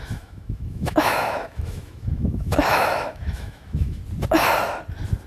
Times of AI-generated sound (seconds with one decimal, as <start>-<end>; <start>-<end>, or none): 0.0-4.0